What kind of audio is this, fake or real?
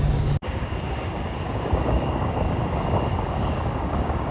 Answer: fake